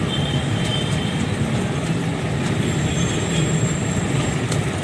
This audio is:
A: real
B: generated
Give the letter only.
B